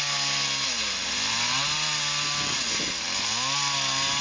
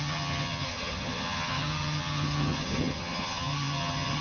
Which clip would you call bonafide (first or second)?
first